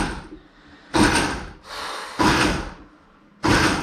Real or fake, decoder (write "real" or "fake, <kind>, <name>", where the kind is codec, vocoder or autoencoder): real